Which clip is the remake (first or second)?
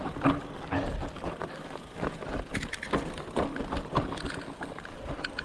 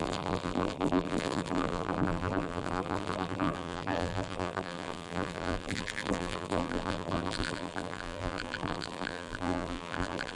second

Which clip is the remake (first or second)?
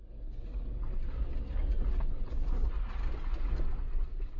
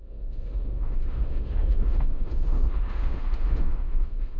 second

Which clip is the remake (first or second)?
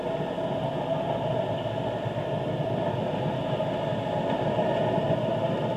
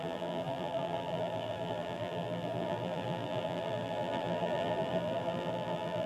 second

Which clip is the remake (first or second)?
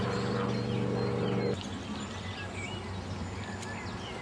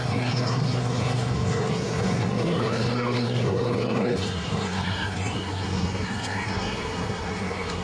second